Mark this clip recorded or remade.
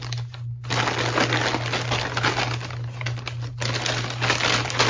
recorded